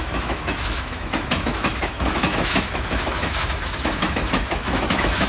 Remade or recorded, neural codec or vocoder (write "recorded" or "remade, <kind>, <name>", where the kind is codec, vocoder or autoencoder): remade, autoencoder, DAC-VAE